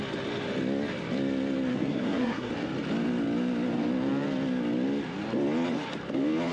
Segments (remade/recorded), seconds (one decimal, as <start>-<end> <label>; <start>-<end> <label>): 0.0-1.7 recorded; 1.7-2.5 remade; 2.5-6.5 recorded